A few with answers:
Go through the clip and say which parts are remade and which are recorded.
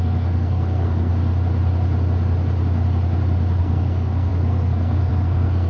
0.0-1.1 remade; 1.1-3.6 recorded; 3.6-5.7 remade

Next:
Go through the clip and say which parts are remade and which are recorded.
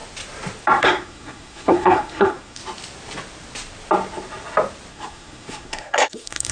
0.0-0.8 recorded; 0.8-2.6 remade; 2.6-4.9 recorded; 4.9-6.5 remade